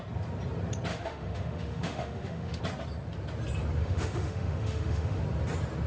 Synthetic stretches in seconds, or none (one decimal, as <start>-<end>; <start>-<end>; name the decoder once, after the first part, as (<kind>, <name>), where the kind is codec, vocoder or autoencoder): 0.9-2.6 (autoencoder, DAC-VAE); 3.8-5.2